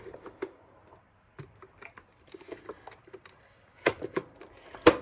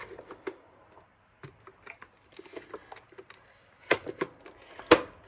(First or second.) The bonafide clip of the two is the second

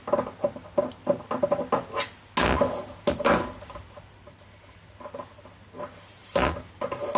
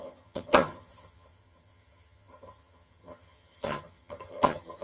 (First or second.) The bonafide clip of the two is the first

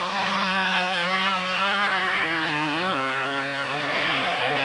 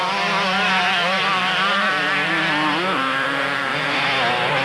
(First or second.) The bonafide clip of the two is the second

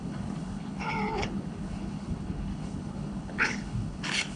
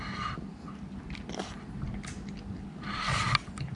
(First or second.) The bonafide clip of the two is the second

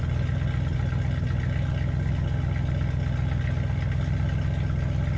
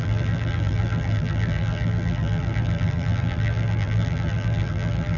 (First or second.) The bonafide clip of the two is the first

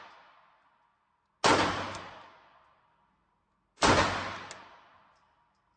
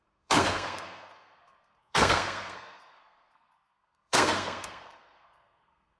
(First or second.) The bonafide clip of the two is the first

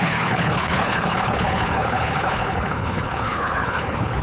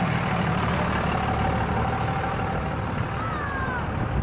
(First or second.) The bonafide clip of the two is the second